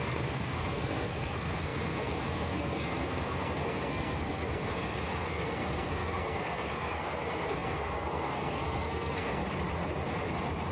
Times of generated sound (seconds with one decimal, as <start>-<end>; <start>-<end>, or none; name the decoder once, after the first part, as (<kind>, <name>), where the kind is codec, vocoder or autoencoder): 0.0-9.4 (codec, SNAC)